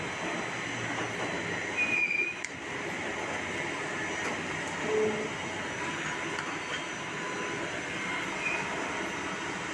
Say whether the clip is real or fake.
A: real